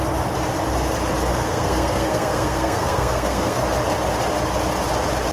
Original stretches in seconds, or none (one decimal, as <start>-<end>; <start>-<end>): 0.0-1.3; 3.6-5.3

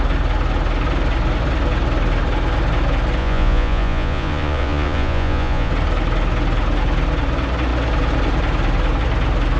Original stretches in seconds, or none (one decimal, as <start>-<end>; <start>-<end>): 0.0-3.2; 5.7-9.6

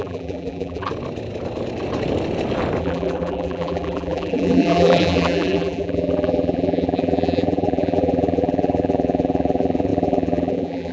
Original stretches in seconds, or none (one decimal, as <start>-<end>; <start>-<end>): 0.9-2.8